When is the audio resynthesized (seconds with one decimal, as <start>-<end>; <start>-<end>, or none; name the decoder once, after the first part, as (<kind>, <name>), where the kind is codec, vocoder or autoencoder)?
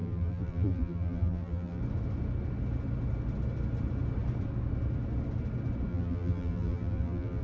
0.0-1.8 (vocoder, BigVGAN v2); 5.9-7.4